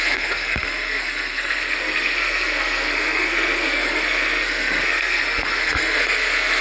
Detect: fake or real fake